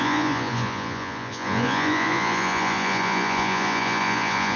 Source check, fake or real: fake